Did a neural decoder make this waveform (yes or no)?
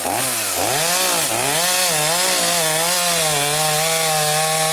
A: no